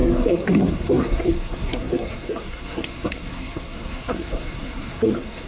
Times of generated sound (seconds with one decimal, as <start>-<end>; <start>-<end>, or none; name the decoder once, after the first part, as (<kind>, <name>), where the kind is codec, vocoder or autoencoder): 0.0-5.5 (codec, SNAC)